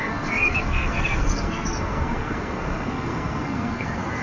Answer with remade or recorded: remade